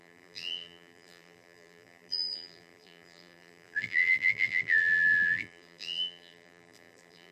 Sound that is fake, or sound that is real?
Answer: fake